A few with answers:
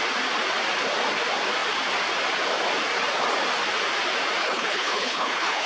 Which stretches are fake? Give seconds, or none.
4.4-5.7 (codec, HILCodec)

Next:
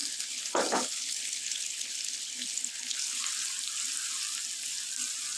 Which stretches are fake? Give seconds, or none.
0.0-3.2 (codec, HILCodec)